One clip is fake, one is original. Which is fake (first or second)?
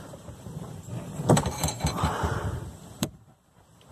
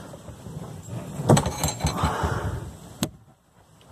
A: first